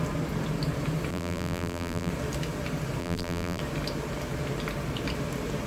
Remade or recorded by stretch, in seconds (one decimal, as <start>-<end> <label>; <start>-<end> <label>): 0.0-1.1 recorded; 1.1-2.1 remade; 2.1-3.0 recorded; 3.0-3.6 remade; 3.6-5.7 recorded